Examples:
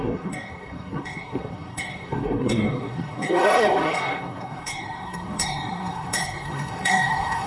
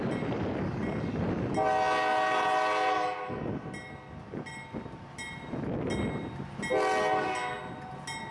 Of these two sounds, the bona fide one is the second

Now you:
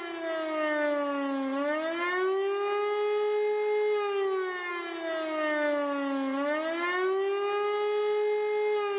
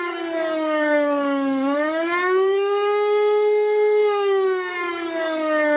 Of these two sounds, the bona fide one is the first